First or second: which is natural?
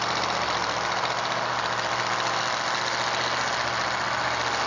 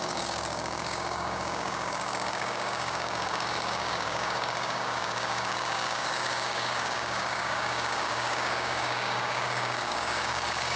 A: first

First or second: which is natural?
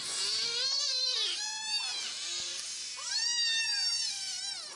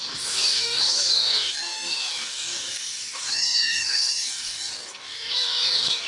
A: first